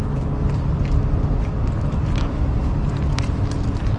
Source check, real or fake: real